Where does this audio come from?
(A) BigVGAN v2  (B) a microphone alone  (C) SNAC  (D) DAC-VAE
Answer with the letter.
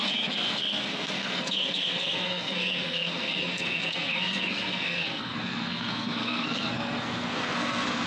C